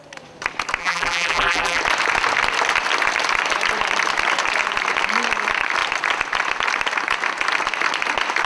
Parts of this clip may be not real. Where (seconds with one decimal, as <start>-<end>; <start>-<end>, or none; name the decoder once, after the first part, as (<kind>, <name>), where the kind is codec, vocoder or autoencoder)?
0.8-1.8 (vocoder, BigVGAN v2)